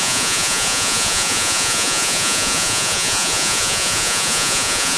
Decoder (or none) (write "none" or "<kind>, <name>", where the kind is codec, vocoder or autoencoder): vocoder, Vocos